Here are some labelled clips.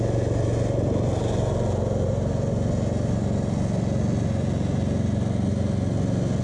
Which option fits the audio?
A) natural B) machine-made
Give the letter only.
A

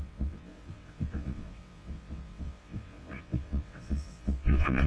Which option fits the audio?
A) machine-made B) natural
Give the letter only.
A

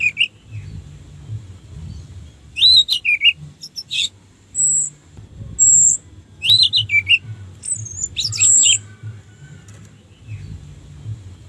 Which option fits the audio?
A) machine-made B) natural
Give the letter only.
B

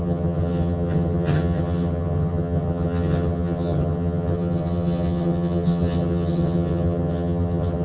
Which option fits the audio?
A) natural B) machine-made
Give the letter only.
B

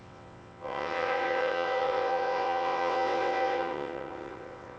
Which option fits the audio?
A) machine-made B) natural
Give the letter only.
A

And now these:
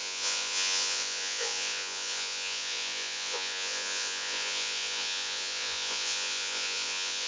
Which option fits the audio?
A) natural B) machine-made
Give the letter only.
B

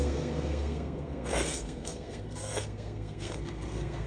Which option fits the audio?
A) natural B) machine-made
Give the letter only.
B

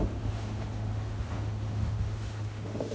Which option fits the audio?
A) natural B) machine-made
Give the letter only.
B